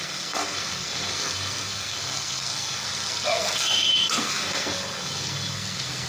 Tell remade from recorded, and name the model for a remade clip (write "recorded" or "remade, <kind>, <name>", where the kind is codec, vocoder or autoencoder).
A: remade, codec, SNAC